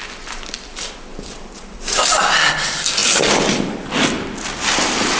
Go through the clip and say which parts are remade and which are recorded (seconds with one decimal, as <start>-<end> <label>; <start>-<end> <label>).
0.0-1.1 recorded; 1.1-2.0 remade; 2.0-5.2 recorded